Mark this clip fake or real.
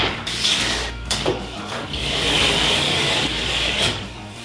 fake